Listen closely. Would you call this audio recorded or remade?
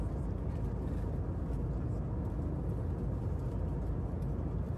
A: recorded